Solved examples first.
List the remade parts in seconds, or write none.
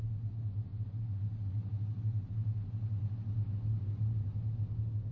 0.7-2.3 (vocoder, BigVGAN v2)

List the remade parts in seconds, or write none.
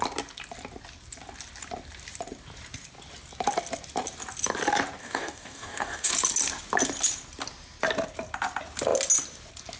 5.0-6.1 (codec, DAC)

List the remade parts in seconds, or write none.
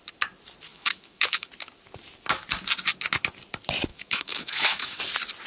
0.7-1.5 (autoencoder, DAC-VAE); 3.9-5.0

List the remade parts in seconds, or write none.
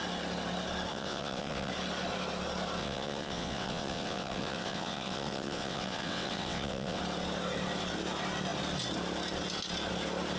0.9-1.7 (vocoder, WaveNeXt); 2.8-7.0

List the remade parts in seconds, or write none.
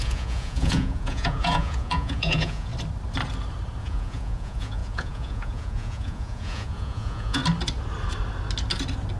0.0-2.7 (vocoder, Vocos); 3.8-7.4